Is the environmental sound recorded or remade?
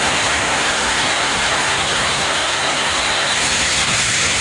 remade